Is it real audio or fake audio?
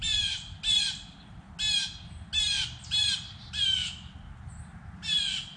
real